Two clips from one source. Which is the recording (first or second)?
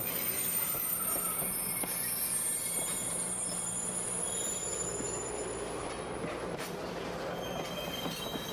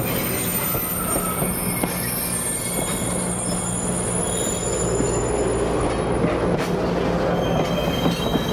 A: second